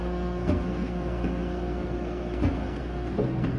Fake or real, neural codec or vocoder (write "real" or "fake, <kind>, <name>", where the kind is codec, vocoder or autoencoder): fake, codec, SNAC